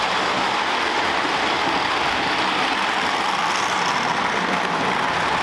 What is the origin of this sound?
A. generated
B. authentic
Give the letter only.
B